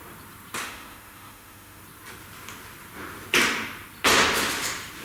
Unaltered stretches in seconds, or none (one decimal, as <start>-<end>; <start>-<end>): 0.0-0.6; 1.8-5.0